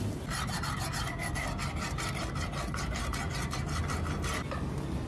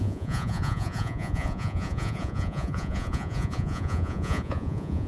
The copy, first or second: second